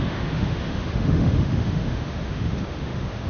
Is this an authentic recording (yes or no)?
no